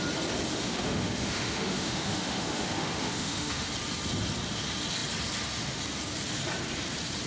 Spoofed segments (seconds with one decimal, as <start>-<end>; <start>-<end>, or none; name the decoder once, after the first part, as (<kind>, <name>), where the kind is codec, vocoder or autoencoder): 0.5-3.7 (autoencoder, DAC-VAE)